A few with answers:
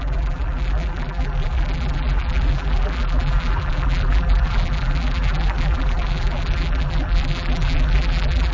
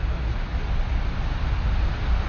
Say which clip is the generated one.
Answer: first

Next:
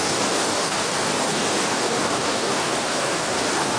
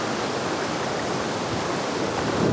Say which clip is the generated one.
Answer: first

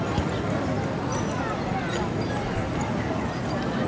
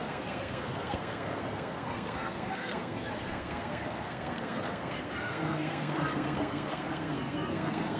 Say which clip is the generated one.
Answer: second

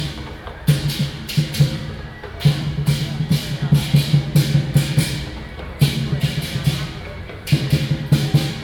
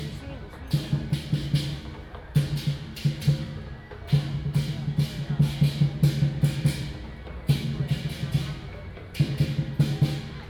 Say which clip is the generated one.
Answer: first